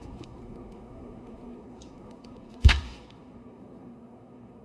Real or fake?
fake